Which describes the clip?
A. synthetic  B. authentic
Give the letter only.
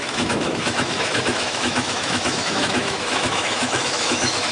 A